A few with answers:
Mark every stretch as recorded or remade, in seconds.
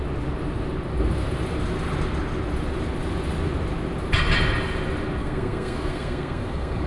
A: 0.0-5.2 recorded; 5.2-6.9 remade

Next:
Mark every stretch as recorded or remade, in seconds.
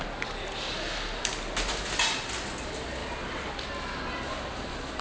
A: 0.0-3.0 recorded; 3.0-3.7 remade; 3.7-5.0 recorded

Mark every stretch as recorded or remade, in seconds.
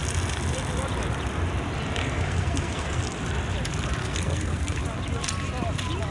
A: 0.0-2.0 recorded; 2.0-3.0 remade; 3.0-4.0 recorded; 4.0-4.8 remade; 4.8-6.1 recorded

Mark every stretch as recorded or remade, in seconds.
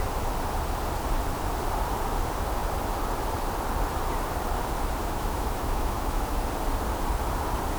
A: 0.0-5.0 recorded; 5.0-6.4 remade; 6.4-7.8 recorded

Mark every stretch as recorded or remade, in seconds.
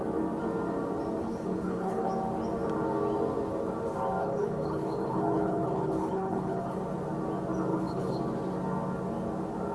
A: 0.0-1.2 recorded; 1.2-2.1 remade; 2.1-4.2 recorded; 4.2-6.8 remade; 6.8-7.7 recorded; 7.7-8.2 remade; 8.2-9.7 recorded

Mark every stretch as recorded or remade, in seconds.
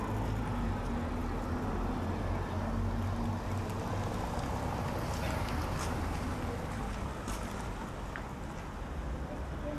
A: 0.0-9.8 recorded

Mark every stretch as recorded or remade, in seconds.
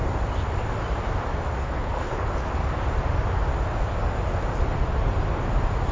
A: 0.0-1.6 recorded; 1.6-2.3 remade; 2.3-5.9 recorded